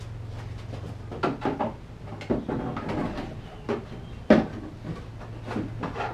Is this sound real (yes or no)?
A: yes